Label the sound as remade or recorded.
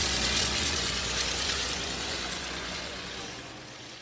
remade